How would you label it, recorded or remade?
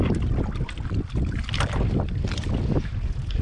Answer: recorded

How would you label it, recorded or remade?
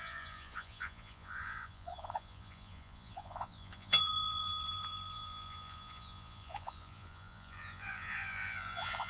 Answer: remade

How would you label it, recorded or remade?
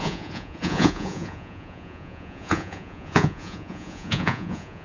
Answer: remade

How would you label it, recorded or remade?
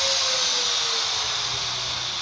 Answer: recorded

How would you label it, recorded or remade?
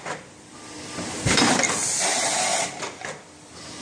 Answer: recorded